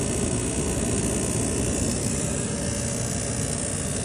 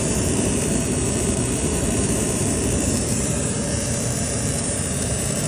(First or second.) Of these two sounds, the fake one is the second